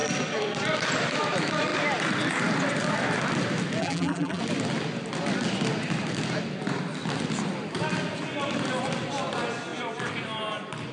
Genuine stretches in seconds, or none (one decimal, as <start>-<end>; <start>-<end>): 0.0-3.8; 4.4-10.9